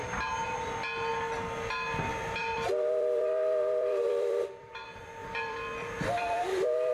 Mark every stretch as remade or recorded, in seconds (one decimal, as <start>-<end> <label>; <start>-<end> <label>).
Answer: 0.0-2.1 recorded; 2.1-4.7 remade; 4.7-5.2 recorded; 5.2-6.9 remade

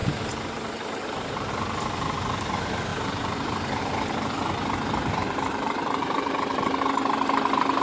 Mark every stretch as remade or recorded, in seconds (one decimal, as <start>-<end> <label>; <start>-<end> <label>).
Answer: 0.0-1.5 remade; 1.5-2.9 recorded; 2.9-3.8 remade; 3.8-5.2 recorded; 5.2-6.8 remade; 6.8-7.8 recorded

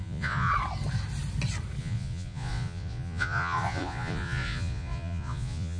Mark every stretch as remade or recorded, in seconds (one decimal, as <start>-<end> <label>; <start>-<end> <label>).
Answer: 0.0-0.5 remade; 0.5-1.8 recorded; 1.8-5.8 remade

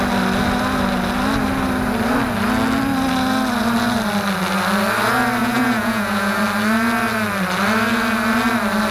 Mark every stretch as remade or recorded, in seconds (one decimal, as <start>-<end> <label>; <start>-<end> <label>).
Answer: 0.0-5.4 recorded; 5.4-6.4 remade; 6.4-8.9 recorded

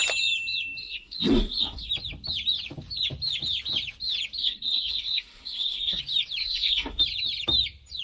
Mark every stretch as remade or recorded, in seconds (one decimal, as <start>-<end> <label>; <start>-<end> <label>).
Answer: 0.0-0.8 recorded; 0.8-1.9 remade; 1.9-4.4 recorded; 4.4-6.0 remade; 6.0-6.4 recorded; 6.4-7.0 remade; 7.0-8.0 recorded

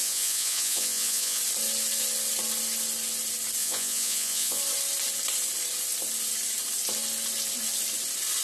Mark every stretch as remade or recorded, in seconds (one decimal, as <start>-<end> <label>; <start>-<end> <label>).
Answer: 0.0-1.4 remade; 1.4-3.6 recorded; 3.6-4.6 remade; 4.6-8.4 recorded